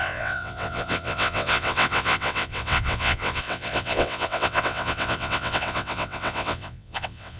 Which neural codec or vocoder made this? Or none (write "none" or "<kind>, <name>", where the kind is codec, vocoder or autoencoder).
vocoder, WaveNeXt